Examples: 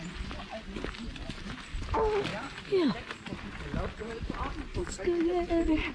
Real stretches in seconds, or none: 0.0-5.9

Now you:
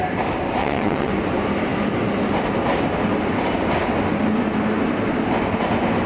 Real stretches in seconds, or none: 0.0-0.6; 1.1-6.1

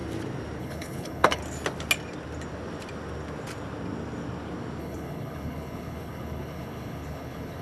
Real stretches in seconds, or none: 0.0-0.6; 1.4-4.8

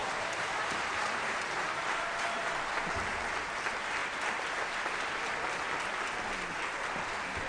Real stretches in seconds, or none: 2.4-7.5

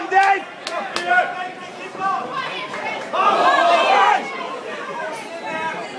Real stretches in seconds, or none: 0.4-1.1